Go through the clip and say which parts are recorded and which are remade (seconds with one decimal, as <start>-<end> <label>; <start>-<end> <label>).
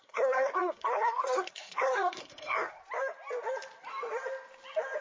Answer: 0.0-2.8 remade; 2.8-5.0 recorded